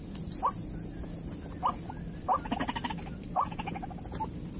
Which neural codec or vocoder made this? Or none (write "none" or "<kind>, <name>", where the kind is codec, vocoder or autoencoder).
none